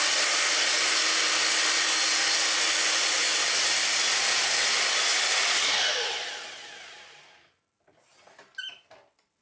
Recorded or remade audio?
recorded